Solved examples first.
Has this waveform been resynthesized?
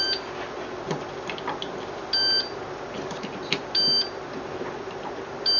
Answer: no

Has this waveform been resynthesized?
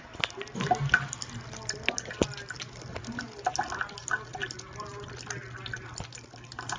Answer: no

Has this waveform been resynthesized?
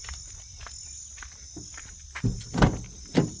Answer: no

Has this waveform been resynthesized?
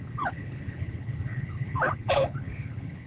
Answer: yes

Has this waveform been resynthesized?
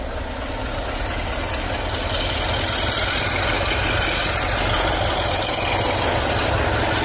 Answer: no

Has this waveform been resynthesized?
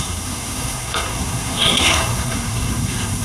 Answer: yes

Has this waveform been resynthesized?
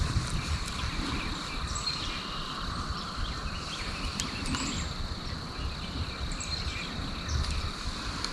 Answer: no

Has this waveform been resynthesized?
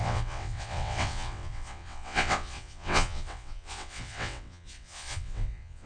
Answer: yes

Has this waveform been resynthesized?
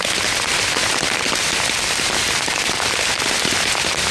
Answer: no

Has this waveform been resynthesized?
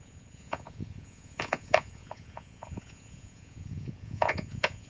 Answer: yes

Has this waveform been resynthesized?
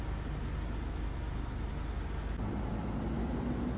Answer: no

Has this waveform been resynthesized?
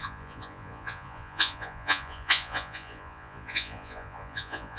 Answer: yes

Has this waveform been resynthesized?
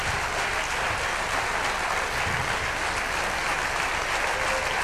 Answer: no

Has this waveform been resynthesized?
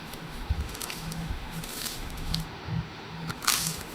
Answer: yes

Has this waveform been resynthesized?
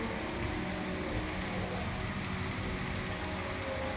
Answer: no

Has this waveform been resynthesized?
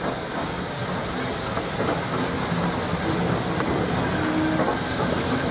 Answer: no